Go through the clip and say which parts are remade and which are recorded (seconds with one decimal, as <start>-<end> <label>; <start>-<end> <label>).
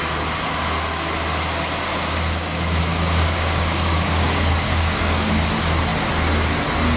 0.0-2.9 recorded; 2.9-5.3 remade; 5.3-7.0 recorded